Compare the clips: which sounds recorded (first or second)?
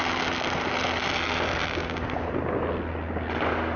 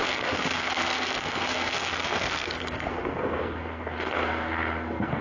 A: first